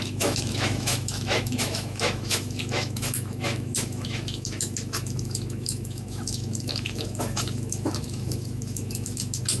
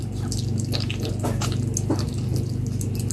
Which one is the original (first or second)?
second